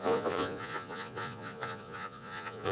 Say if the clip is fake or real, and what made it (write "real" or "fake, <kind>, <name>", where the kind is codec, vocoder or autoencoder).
fake, vocoder, Vocos